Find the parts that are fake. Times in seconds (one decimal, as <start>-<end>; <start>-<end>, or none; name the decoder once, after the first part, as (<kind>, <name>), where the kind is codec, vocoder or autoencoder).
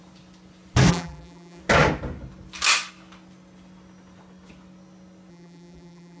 0.9-1.6 (vocoder, BigVGAN v2); 5.3-6.2